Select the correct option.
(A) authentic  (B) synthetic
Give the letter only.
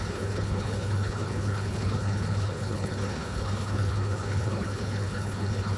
B